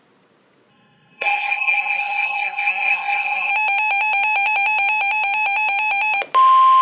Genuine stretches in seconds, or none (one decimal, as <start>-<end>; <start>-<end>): 0.0-0.7; 3.5-6.8